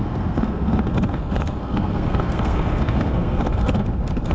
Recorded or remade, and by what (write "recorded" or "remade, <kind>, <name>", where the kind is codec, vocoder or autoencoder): remade, codec, SNAC